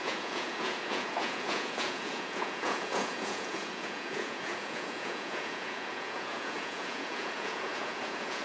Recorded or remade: remade